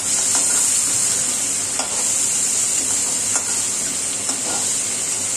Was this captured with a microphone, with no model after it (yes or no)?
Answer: yes